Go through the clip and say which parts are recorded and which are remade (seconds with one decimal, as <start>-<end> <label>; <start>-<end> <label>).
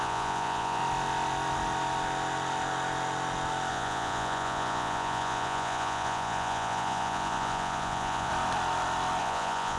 0.0-0.8 remade; 0.8-3.7 recorded; 3.7-8.3 remade; 8.3-9.2 recorded; 9.2-9.8 remade